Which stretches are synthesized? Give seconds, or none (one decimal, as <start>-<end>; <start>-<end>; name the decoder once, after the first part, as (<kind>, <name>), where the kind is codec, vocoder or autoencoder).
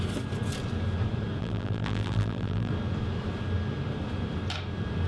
1.4-2.7 (vocoder, BigVGAN v2)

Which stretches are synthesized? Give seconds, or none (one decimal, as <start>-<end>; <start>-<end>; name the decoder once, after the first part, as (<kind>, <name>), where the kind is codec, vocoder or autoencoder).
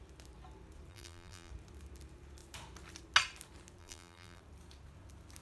0.9-1.5 (vocoder, BigVGAN v2); 3.8-4.4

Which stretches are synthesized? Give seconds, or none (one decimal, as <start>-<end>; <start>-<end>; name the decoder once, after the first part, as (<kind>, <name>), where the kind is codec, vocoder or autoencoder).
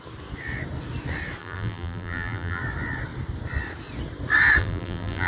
1.4-2.6 (vocoder, BigVGAN v2); 4.6-5.3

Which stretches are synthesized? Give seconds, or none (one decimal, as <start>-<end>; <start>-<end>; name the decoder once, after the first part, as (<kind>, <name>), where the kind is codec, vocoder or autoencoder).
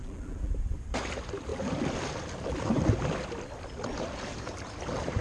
0.0-0.5 (vocoder, BigVGAN v2)